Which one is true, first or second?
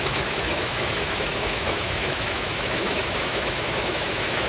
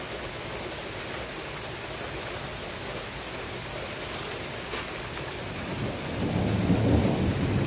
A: second